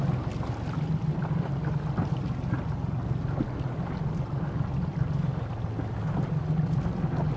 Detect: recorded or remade recorded